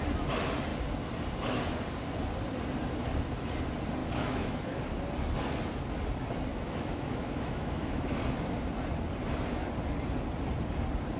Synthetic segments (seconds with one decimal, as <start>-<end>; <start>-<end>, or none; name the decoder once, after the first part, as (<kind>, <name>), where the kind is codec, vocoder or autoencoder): 4.0-4.8 (autoencoder, DAC-VAE); 6.5-8.2